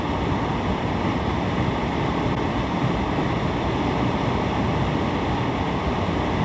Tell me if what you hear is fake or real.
real